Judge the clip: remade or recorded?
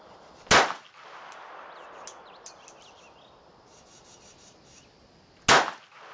recorded